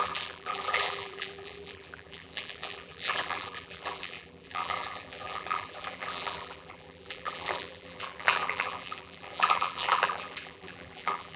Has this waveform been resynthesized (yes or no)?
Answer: yes